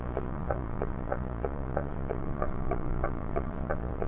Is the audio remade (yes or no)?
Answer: yes